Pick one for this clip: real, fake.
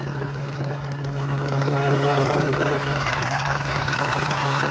fake